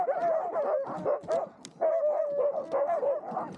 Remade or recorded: recorded